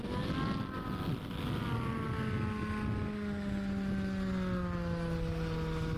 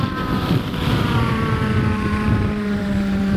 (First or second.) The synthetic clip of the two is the second